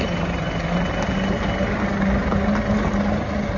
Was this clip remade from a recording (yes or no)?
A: no